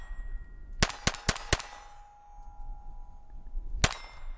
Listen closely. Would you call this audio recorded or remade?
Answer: recorded